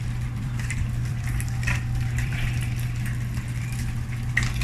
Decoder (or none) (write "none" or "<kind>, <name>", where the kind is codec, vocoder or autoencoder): vocoder, BigVGAN v2